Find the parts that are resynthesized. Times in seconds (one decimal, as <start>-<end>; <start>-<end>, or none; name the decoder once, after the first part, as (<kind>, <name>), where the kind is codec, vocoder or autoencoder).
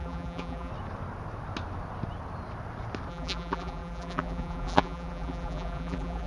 0.0-0.7 (vocoder, BigVGAN v2); 3.1-6.3